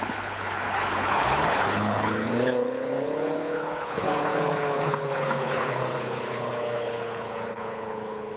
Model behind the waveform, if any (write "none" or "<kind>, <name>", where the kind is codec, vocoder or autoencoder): codec, HILCodec